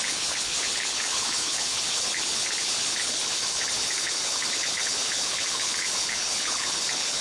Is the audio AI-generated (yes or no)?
yes